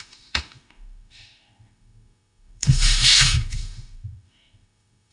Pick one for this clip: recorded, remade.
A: remade